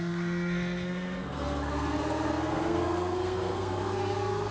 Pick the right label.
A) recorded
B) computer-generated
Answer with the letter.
B